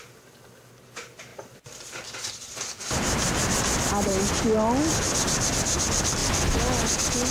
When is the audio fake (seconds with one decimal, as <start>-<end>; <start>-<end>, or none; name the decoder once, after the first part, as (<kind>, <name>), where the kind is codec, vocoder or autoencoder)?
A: none